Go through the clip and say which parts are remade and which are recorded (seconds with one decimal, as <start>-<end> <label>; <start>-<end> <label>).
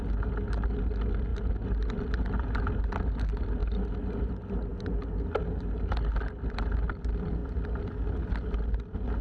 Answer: 0.0-9.2 recorded